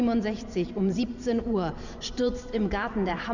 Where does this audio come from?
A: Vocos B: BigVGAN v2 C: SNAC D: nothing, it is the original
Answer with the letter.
B